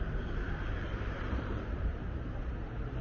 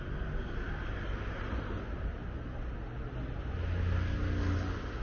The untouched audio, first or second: second